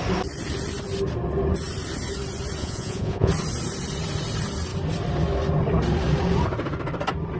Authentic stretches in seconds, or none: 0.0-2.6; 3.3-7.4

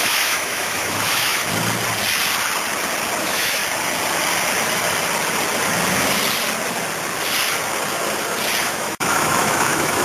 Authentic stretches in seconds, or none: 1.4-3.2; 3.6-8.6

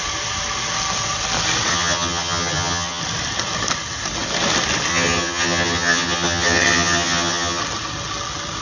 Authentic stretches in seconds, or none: 0.0-1.7; 3.0-4.9; 7.6-8.6